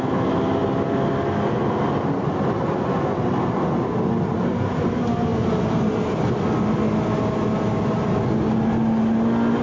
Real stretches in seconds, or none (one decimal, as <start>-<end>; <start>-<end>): 0.0-9.6